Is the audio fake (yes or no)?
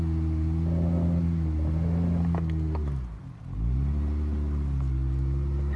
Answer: no